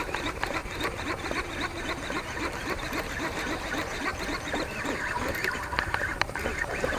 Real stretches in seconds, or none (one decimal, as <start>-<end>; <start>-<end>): 0.6-2.5